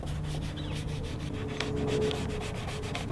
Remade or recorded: recorded